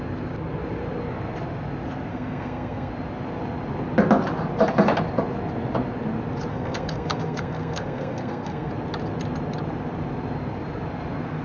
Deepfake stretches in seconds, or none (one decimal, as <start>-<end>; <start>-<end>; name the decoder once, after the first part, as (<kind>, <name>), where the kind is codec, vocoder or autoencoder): 2.1-2.9 (codec, SNAC); 6.5-8.7